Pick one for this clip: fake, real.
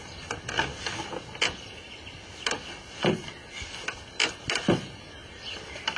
real